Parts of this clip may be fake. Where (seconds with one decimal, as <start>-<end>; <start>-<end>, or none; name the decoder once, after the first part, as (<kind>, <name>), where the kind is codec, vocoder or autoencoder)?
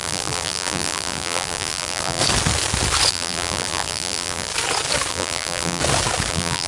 0.0-2.2 (vocoder, BigVGAN v2); 3.1-4.5; 5.1-5.8; 6.3-6.7